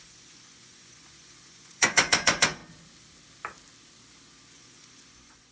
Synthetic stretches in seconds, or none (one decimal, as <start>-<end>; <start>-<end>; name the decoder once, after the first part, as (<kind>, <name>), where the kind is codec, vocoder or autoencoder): 0.0-2.6 (vocoder, Vocos); 4.5-5.5